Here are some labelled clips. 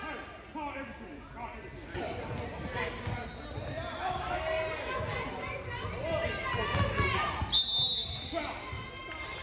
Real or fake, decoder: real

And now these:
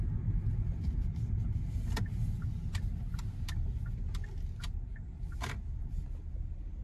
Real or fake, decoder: real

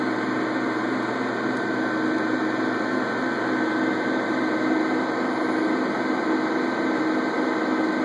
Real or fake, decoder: real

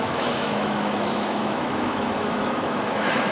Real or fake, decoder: fake, autoencoder, DAC-VAE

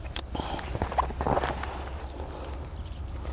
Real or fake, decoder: real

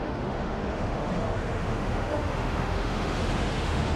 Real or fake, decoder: fake, autoencoder, DAC-VAE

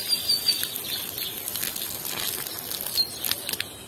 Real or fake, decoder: real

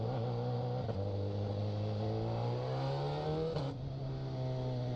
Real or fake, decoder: real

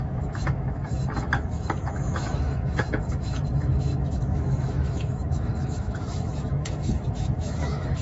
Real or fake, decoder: fake, autoencoder, DAC-VAE